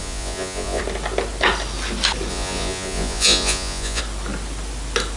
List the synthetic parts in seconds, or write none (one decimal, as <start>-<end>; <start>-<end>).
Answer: 0.0-0.8; 2.3-4.0